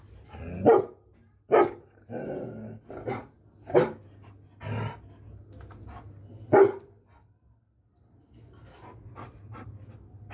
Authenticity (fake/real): real